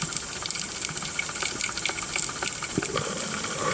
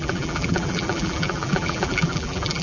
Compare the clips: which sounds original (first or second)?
first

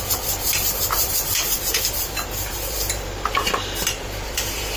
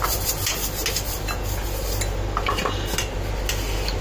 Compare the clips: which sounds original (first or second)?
second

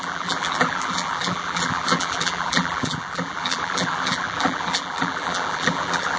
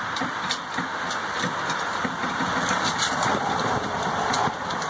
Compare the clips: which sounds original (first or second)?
second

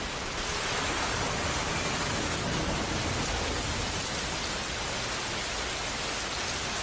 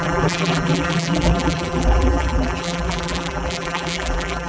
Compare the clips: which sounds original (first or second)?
first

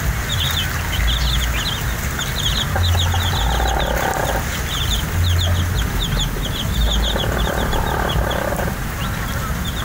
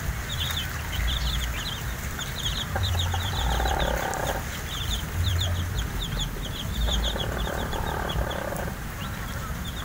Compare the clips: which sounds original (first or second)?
first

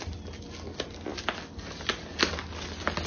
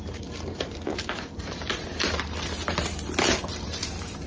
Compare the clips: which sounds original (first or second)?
first